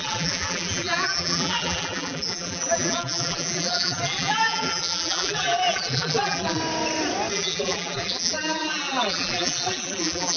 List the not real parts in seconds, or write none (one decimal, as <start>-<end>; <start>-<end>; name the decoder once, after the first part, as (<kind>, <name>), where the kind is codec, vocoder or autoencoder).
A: 0.0-6.6 (vocoder, BigVGAN v2); 7.3-10.4